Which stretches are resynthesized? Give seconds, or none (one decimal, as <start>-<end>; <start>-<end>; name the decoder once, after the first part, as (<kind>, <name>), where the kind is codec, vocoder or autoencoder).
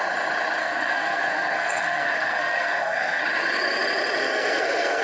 0.6-3.2 (codec, SNAC); 4.2-5.0